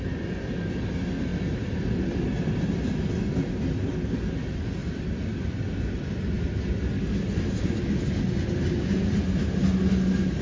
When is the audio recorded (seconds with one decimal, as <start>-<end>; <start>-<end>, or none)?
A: 0.0-1.3; 4.3-4.8; 5.6-10.4

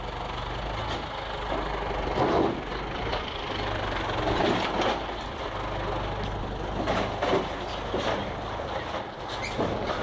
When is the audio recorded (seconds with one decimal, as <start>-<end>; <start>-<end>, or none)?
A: 0.0-10.0

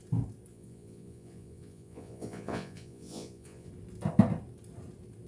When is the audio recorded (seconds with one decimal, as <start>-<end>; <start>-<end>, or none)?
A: 0.0-0.5; 3.7-5.3